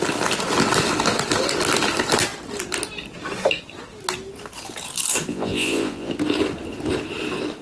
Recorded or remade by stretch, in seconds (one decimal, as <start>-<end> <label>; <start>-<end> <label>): 0.0-5.3 recorded; 5.3-6.1 remade; 6.1-7.6 recorded

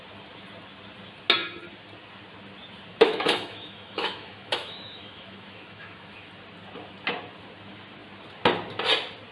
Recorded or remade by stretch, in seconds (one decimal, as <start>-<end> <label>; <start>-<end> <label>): 0.0-2.9 recorded; 2.9-6.3 remade; 6.3-9.3 recorded